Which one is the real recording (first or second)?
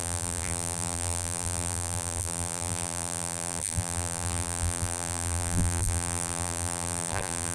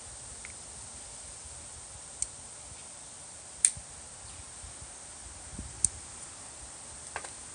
second